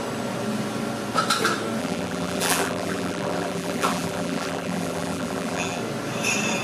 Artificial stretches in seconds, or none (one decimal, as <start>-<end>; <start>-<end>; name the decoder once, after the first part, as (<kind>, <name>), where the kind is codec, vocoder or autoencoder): 1.8-5.8 (vocoder, BigVGAN v2)